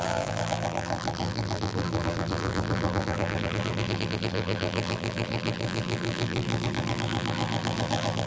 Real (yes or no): no